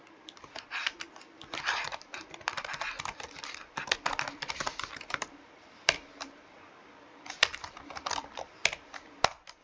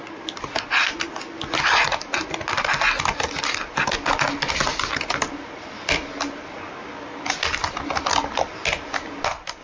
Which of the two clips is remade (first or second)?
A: first